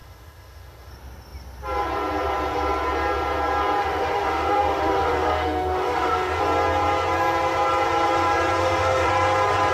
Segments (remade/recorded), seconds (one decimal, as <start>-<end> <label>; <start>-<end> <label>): 0.0-0.9 remade; 0.9-3.8 recorded; 3.8-6.4 remade; 6.4-8.6 recorded; 8.6-9.1 remade; 9.1-9.7 recorded